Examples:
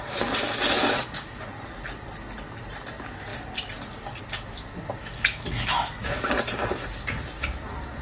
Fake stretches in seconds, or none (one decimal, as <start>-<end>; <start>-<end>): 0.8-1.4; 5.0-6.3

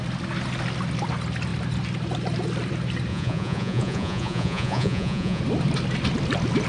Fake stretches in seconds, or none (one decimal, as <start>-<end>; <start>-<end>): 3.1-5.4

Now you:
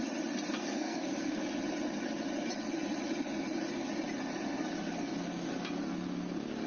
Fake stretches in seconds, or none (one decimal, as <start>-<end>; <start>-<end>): 0.6-1.4

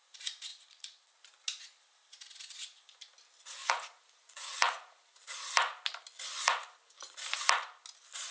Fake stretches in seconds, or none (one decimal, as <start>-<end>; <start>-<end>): 0.5-1.1; 3.6-5.5

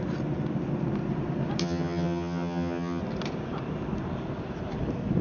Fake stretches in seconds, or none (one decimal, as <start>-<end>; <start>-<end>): 1.6-3.0

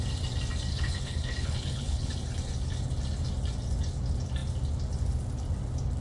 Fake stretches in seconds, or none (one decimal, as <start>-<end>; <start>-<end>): 0.7-2.1

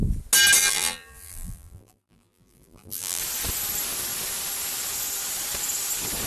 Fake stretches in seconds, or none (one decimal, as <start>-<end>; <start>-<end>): 0.6-3.2